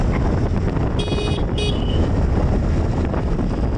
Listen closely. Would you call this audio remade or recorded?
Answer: recorded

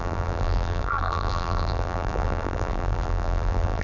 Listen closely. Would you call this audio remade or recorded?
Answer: remade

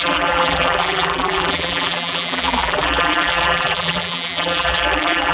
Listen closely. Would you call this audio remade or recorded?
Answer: remade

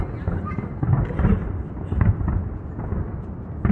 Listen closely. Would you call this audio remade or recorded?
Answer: recorded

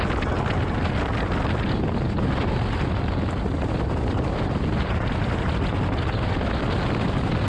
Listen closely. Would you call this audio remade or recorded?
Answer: recorded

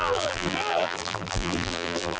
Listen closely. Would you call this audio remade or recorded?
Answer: remade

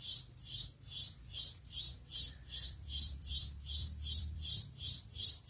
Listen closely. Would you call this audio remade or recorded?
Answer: remade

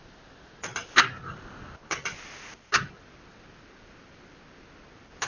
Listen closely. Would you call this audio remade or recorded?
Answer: recorded